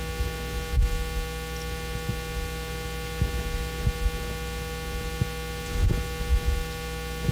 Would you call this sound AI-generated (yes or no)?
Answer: no